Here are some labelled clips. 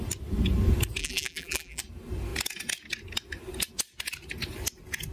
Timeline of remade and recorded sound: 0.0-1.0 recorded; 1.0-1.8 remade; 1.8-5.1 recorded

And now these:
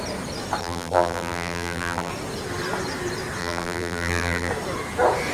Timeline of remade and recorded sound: 0.0-0.6 recorded; 0.6-2.1 remade; 2.1-3.4 recorded; 3.4-4.5 remade; 4.5-5.3 recorded

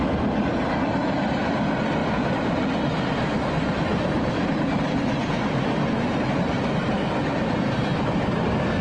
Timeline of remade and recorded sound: 0.0-2.0 recorded; 2.0-3.5 remade; 3.5-3.9 recorded; 3.9-4.8 remade; 4.8-8.8 recorded

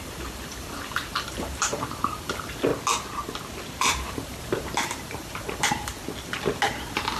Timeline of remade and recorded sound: 0.0-2.7 remade; 2.7-3.8 recorded; 3.8-5.9 remade; 5.9-6.8 recorded; 6.8-7.2 remade

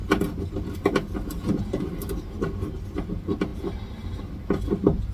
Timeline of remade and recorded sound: 0.0-5.1 recorded

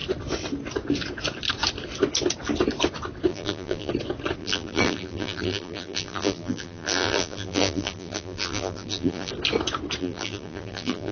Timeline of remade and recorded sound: 0.0-3.3 recorded; 3.3-3.9 remade; 3.9-4.4 recorded; 4.4-9.3 remade; 9.3-10.0 recorded; 10.0-11.1 remade

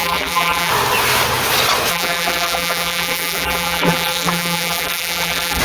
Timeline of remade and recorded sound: 0.0-0.7 remade; 0.7-1.9 recorded; 1.9-5.6 remade